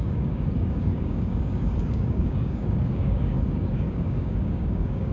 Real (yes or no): no